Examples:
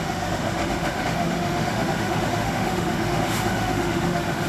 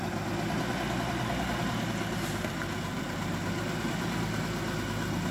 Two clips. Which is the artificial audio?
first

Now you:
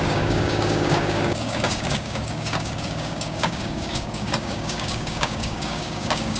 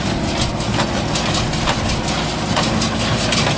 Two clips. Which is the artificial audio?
first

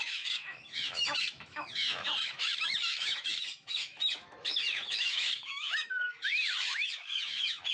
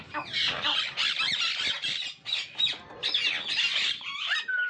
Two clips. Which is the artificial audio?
first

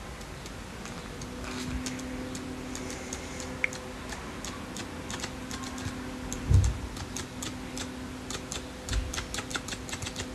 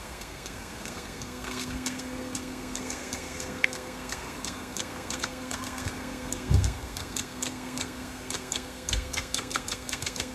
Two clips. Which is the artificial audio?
second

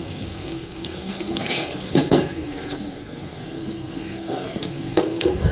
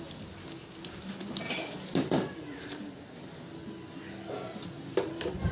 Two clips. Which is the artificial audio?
first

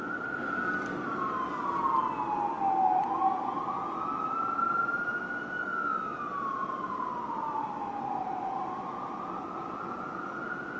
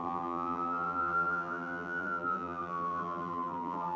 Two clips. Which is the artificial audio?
second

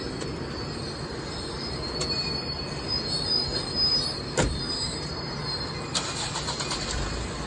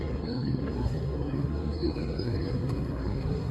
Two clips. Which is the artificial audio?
second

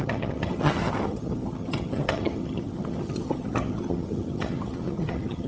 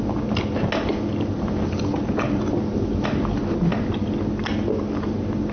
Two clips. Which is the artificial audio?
first